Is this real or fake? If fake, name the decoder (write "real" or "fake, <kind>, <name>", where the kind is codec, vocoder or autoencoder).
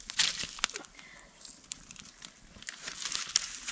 real